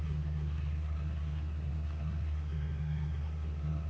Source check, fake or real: fake